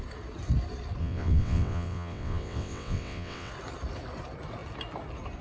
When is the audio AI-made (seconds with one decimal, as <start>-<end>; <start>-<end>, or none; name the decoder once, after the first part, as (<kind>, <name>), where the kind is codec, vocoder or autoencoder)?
1.0-3.5 (vocoder, WaveNeXt)